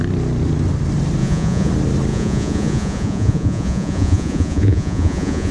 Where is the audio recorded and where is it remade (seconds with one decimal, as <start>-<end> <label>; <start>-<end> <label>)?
0.0-1.2 recorded; 1.2-1.7 remade; 1.7-2.1 recorded; 2.1-5.5 remade